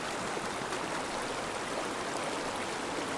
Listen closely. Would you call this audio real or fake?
real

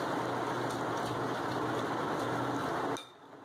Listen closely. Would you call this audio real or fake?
real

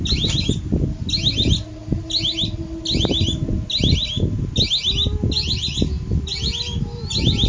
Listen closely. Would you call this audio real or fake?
real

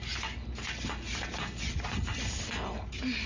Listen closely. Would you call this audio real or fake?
real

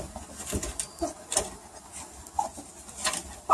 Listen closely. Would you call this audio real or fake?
real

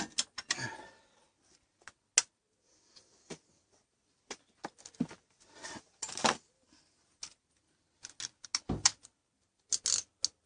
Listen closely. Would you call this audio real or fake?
real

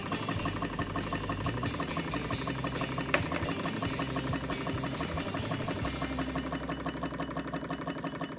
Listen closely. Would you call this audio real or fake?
real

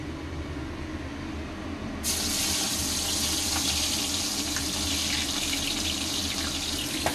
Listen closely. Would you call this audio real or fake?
real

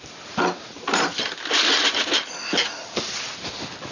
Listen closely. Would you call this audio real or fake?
real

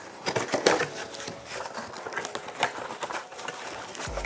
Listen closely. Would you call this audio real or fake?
real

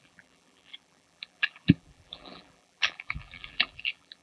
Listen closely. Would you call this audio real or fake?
fake